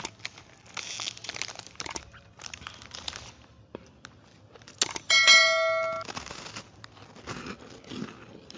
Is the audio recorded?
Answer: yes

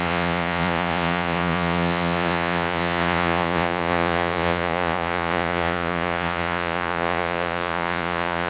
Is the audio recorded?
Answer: no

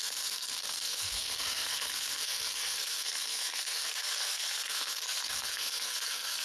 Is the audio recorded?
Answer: no